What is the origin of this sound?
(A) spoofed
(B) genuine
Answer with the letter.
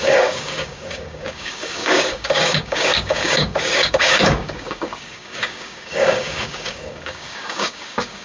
A